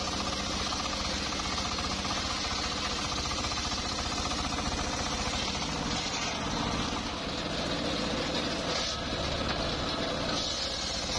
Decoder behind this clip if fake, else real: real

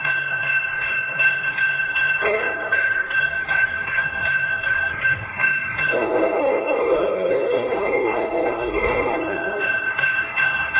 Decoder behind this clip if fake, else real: fake, codec, SNAC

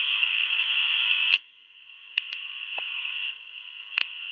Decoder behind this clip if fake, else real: fake, codec, SNAC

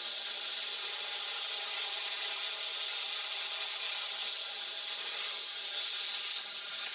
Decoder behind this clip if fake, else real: real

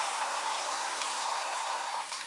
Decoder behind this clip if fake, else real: fake, codec, SNAC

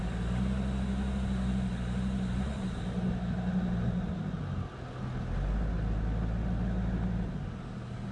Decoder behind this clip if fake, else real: real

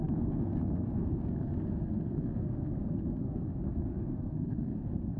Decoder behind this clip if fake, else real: fake, codec, SNAC